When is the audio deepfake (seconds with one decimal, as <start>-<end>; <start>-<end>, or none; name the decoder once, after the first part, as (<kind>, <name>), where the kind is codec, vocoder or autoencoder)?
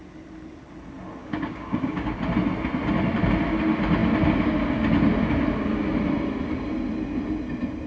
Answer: 1.2-2.2 (codec, DAC)